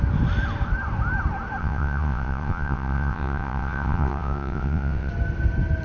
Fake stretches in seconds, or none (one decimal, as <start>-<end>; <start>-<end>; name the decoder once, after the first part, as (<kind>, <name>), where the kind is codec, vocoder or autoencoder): 1.6-5.1 (vocoder, WaveNeXt)